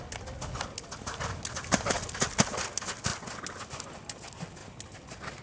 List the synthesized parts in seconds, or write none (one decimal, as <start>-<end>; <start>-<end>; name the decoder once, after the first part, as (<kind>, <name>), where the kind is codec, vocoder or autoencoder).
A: none